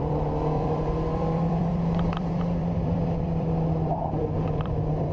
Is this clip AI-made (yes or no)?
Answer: yes